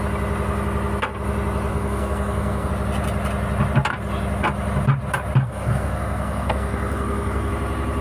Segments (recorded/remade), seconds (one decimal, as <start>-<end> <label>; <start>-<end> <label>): 0.0-1.7 recorded; 1.7-2.7 remade; 2.7-5.4 recorded; 5.4-7.5 remade; 7.5-8.0 recorded